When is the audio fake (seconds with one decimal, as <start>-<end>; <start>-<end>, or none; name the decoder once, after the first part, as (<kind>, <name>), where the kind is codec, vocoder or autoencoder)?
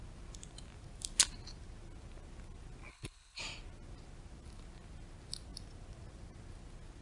2.9-3.4 (codec, HILCodec)